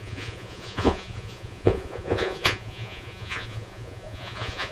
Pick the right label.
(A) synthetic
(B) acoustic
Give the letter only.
A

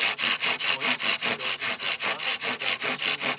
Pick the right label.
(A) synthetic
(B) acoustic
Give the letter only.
B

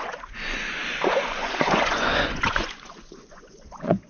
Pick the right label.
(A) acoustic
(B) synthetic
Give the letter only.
B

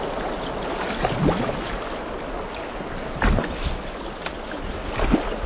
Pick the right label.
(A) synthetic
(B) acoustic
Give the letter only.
B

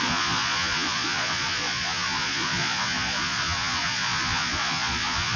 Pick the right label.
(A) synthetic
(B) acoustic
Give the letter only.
A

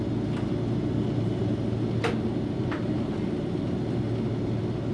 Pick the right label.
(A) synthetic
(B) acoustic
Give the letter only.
B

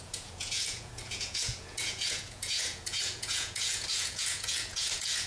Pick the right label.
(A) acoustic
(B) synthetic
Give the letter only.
B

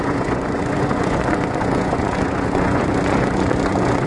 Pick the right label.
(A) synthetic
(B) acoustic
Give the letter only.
A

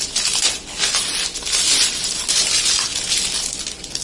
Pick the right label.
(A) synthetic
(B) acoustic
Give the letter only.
B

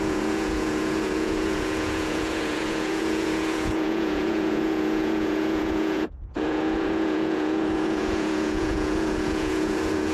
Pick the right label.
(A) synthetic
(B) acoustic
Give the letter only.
A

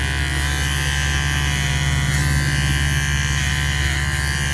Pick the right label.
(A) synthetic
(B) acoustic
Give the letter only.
B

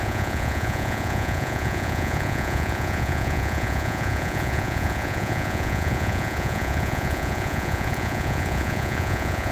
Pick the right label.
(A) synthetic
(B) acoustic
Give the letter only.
A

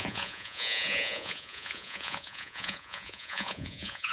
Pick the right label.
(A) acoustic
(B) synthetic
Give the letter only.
B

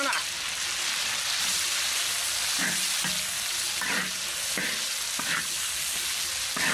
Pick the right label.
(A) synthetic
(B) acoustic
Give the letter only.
B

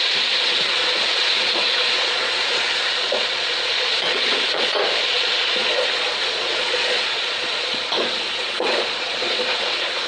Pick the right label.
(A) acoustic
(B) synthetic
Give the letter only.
B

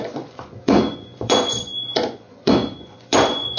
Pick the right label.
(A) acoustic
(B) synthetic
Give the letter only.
B